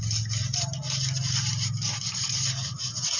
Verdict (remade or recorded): recorded